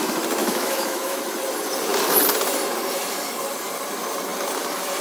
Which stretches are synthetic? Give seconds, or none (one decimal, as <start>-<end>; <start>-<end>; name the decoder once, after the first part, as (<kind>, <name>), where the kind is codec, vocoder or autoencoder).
0.4-1.2 (autoencoder, DAC-VAE)